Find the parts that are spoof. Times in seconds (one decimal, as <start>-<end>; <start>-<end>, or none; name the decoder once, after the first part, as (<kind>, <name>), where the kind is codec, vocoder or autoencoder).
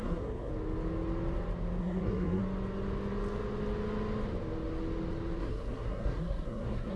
0.0-0.5 (codec, SNAC); 1.8-2.4; 5.4-7.0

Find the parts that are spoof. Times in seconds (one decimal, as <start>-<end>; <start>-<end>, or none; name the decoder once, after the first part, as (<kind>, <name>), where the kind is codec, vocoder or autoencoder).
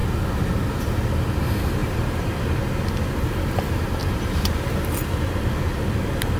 1.8-2.6 (vocoder, BigVGAN v2); 4.0-5.4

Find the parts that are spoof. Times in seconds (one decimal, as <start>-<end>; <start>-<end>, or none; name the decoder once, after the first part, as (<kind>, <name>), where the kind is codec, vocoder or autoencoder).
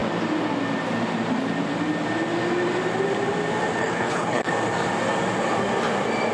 3.8-4.5 (codec, HILCodec)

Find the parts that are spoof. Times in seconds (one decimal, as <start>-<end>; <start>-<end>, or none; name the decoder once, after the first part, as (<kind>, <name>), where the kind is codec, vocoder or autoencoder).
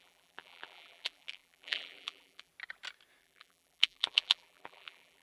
0.0-2.5 (vocoder, BigVGAN v2); 3.2-5.2